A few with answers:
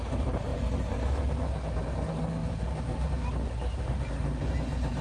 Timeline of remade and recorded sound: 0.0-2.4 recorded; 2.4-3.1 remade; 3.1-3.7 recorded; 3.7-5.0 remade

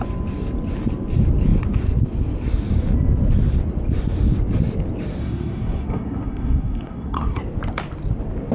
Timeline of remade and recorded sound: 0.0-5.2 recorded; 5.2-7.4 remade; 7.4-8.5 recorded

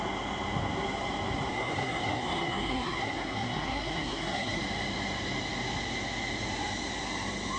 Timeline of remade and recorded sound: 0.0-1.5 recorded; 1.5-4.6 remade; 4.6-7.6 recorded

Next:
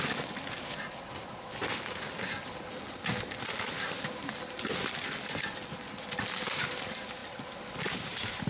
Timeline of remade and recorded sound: 0.0-8.5 recorded

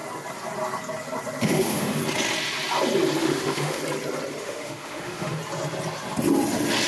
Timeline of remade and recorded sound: 0.0-1.4 recorded; 1.4-2.0 remade; 2.0-3.2 recorded; 3.2-3.8 remade; 3.8-4.4 recorded; 4.4-5.4 remade; 5.4-6.9 recorded

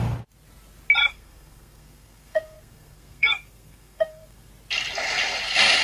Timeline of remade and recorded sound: 0.0-1.0 recorded; 1.0-4.5 remade; 4.5-5.8 recorded